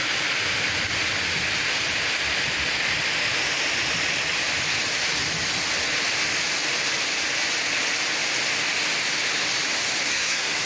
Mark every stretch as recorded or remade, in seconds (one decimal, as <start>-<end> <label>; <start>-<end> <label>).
0.0-10.1 recorded; 10.1-10.7 remade